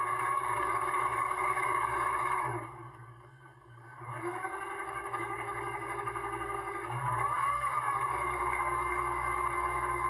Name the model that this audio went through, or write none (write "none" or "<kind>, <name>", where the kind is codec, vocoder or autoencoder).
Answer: codec, DAC